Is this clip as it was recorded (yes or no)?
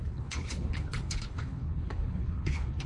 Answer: no